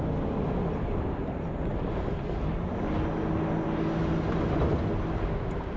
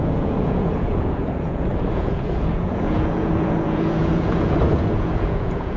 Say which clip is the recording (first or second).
first